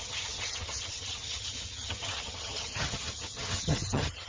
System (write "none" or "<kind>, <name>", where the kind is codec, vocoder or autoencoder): vocoder, HiFi-GAN